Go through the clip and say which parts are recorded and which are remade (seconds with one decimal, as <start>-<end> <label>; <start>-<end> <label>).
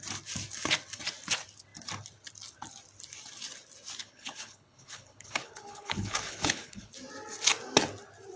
0.0-4.0 recorded; 4.0-6.9 remade; 6.9-8.4 recorded